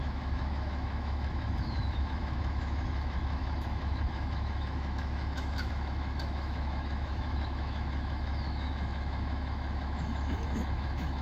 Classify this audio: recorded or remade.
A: remade